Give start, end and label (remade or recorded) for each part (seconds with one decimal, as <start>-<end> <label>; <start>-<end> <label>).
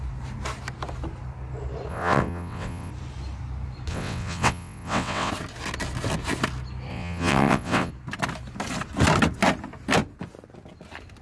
0.0-1.9 recorded; 1.9-2.9 remade; 2.9-3.9 recorded; 3.9-5.3 remade; 5.3-6.9 recorded; 6.9-7.9 remade; 7.9-11.2 recorded